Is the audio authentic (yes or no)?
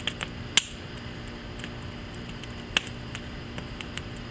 yes